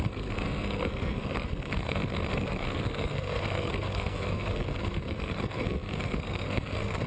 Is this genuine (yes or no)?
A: no